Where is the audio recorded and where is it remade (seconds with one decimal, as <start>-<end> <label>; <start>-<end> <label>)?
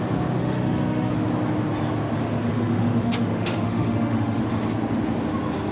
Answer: 0.0-0.4 recorded; 0.4-1.1 remade; 1.1-2.5 recorded; 2.5-4.4 remade; 4.4-5.7 recorded